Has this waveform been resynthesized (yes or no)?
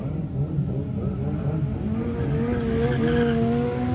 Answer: no